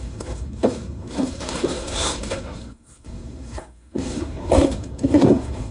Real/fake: fake